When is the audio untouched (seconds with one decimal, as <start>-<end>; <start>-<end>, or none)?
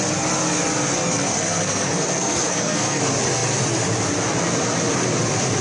0.0-1.0; 3.0-5.6